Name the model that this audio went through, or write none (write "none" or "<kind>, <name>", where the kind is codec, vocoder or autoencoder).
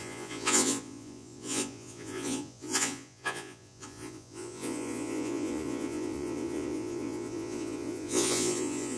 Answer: vocoder, Vocos